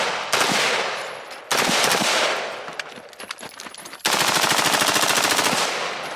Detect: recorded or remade recorded